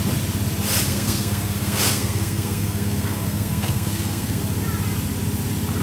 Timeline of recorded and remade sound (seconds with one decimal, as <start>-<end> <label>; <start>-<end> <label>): 0.0-0.9 recorded; 0.9-4.4 remade; 4.4-5.8 recorded